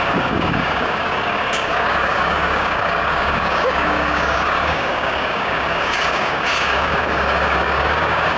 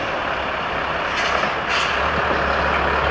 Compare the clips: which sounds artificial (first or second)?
first